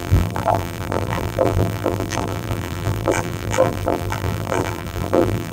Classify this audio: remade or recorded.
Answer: remade